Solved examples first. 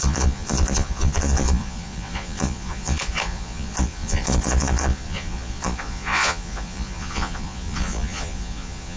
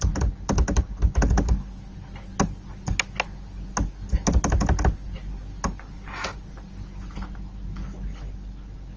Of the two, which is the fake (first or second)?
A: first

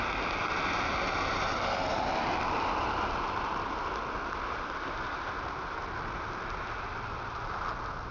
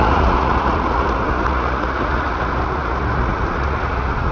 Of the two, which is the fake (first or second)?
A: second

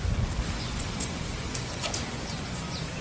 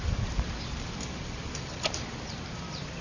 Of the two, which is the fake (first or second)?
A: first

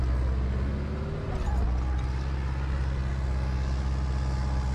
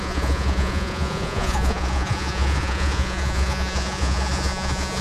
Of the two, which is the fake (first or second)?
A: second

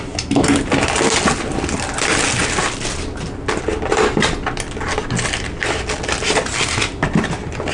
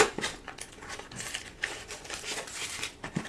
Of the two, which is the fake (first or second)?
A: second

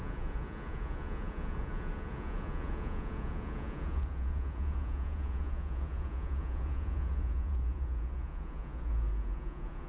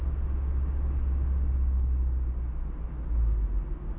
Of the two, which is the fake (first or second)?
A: first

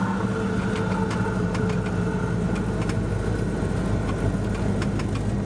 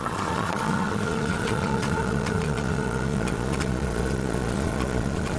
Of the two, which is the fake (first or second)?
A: second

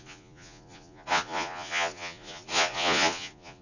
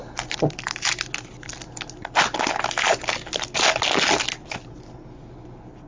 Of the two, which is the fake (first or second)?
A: first